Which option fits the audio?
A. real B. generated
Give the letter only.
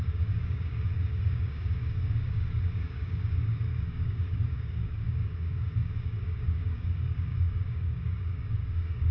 B